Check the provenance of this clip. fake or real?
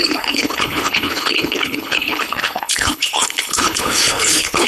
fake